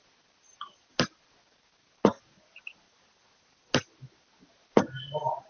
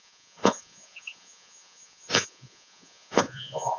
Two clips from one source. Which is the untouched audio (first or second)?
first